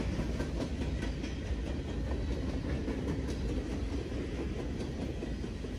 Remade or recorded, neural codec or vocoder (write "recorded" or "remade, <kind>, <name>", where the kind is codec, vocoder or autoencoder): recorded